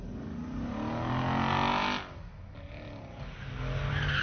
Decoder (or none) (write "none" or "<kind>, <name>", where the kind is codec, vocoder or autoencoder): none